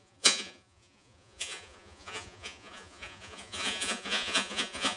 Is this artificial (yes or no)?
yes